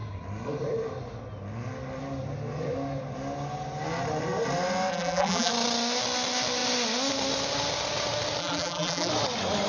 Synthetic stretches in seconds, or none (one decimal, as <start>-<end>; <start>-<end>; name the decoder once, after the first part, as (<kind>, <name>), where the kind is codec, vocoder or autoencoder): 4.9-5.5 (vocoder, BigVGAN v2); 8.4-9.1